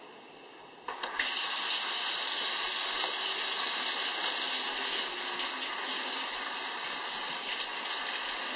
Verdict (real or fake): real